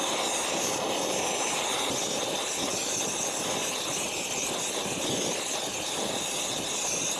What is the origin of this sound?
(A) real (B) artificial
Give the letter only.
A